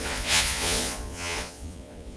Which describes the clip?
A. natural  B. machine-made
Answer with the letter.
B